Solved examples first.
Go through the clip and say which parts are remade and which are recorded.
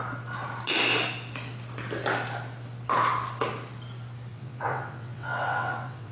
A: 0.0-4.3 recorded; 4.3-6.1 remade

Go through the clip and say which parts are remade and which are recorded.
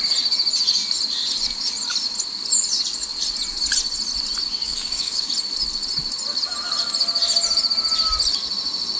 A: 0.0-4.5 recorded; 4.5-5.3 remade; 5.3-9.0 recorded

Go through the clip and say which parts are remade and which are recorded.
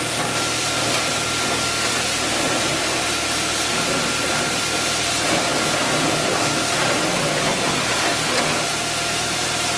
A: 0.0-9.8 recorded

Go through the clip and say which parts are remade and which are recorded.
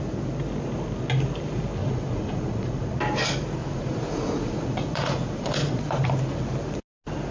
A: 0.0-1.8 recorded; 1.8-2.9 remade; 2.9-3.6 recorded; 3.6-5.8 remade; 5.8-7.3 recorded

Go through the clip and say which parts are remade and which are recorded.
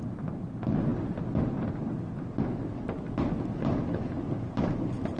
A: 0.0-5.2 recorded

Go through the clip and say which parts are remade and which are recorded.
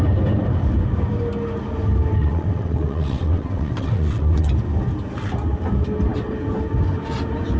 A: 0.0-2.2 recorded; 2.2-4.5 remade; 4.5-7.6 recorded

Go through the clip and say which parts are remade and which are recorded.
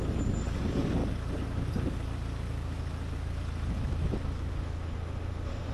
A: 0.0-4.5 recorded; 4.5-5.7 remade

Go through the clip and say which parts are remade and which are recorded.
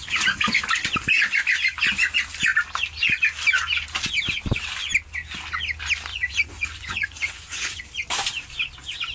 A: 0.0-6.1 recorded; 6.1-7.8 remade; 7.8-9.1 recorded